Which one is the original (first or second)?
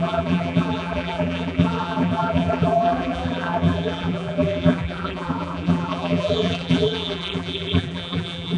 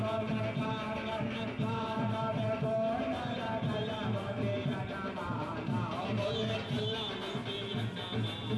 second